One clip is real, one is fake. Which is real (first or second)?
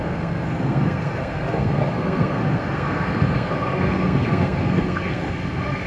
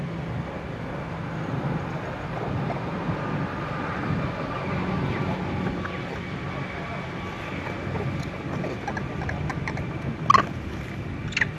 second